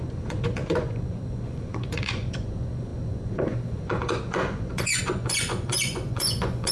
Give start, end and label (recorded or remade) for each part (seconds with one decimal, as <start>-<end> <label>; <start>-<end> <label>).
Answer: 0.0-6.7 remade